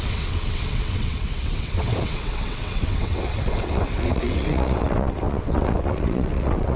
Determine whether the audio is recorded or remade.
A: remade